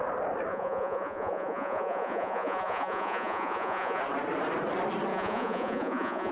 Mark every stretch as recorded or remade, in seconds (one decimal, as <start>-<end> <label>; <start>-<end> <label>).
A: 0.0-0.5 recorded; 0.5-4.0 remade; 4.0-5.1 recorded; 5.1-6.3 remade